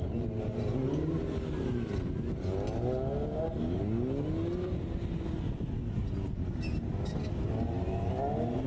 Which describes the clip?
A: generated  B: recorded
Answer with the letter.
B